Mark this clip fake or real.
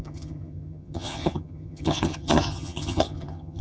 fake